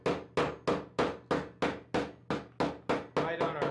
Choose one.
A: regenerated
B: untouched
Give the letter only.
B